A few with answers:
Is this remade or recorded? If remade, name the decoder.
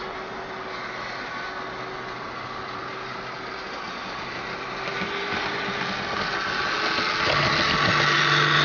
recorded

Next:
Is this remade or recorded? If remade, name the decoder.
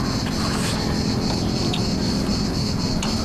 recorded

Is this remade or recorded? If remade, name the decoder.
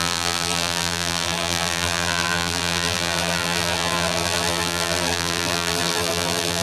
remade, vocoder, BigVGAN v2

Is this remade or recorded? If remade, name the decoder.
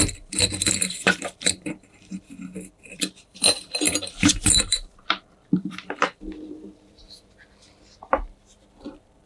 remade, vocoder, BigVGAN v2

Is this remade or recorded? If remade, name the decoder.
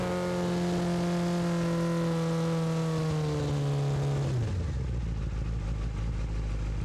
recorded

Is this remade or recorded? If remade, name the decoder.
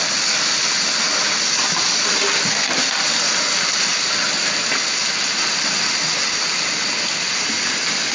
recorded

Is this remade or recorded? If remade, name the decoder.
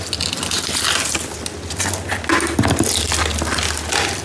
recorded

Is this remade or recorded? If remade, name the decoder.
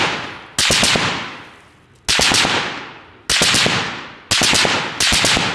recorded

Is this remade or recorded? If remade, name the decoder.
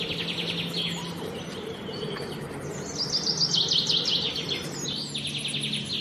recorded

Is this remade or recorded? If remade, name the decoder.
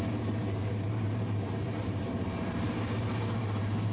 remade, vocoder, BigVGAN v2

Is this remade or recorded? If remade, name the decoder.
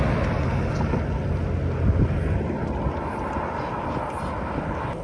recorded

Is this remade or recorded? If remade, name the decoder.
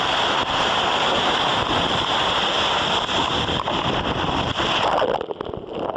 remade, vocoder, BigVGAN v2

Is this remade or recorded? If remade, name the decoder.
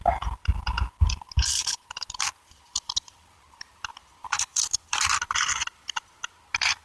remade, vocoder, BigVGAN v2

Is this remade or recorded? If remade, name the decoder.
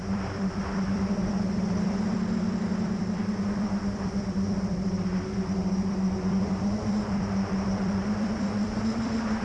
remade, vocoder, BigVGAN v2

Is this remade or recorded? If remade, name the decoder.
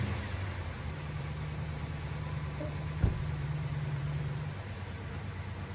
remade, vocoder, BigVGAN v2